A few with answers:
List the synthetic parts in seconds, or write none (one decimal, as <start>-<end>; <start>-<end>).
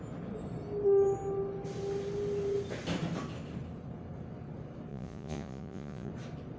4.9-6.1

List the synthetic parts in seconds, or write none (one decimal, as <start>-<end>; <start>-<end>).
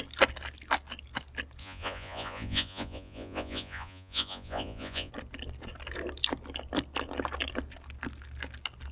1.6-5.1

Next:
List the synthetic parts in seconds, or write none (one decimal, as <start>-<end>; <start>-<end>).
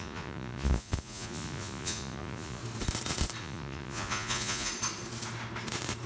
0.0-2.6; 3.4-4.7